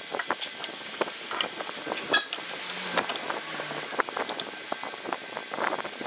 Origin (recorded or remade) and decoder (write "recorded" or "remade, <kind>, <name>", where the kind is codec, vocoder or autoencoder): recorded